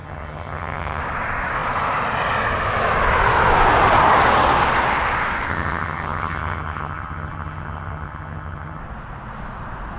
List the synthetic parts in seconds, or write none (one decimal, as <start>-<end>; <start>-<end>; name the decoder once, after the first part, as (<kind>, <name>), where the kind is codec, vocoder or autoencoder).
0.0-1.0 (vocoder, HiFi-GAN); 5.5-8.8